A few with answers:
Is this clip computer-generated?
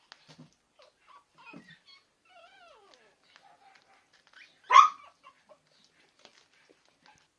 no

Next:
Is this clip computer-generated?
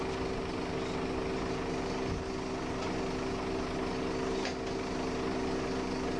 no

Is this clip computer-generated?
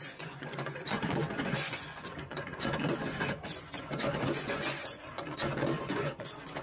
yes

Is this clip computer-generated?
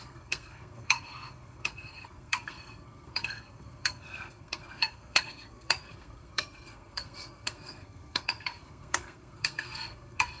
yes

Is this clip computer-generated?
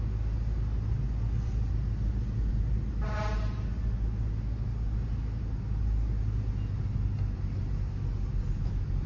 no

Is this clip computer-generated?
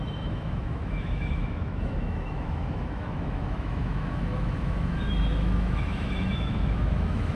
yes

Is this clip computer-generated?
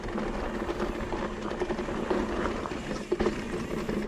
no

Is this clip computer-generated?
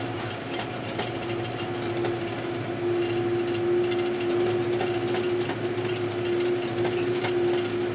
no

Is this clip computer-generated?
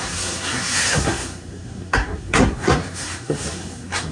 yes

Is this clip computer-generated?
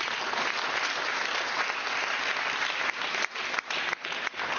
no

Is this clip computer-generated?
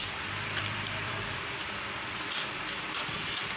yes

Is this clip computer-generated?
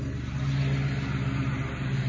no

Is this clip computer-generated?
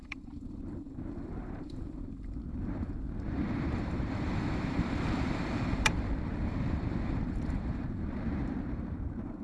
yes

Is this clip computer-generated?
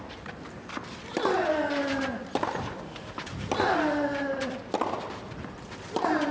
no